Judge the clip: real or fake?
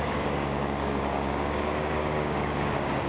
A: fake